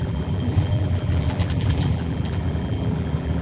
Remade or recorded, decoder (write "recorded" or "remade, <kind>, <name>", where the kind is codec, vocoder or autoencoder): remade, vocoder, BigVGAN v2